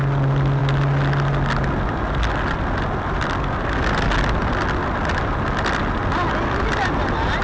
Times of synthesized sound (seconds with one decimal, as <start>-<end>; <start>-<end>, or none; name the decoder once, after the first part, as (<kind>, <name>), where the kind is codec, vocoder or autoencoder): none